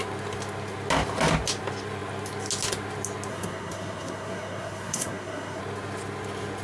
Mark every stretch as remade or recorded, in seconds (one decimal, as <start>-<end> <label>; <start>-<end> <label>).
0.0-3.3 recorded; 3.3-5.6 remade; 5.6-6.6 recorded